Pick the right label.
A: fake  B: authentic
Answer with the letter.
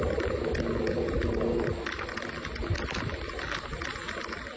B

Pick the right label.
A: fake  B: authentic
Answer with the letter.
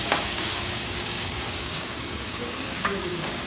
A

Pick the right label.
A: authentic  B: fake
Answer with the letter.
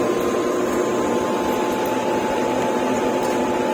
A